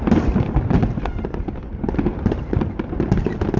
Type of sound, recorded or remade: recorded